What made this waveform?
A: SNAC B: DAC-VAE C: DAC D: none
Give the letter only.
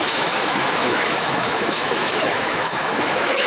B